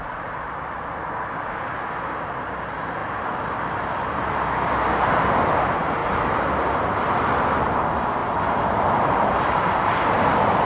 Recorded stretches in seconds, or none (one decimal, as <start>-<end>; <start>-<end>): 0.0-10.6